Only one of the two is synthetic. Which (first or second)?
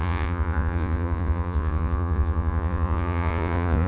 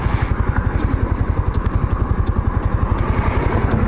first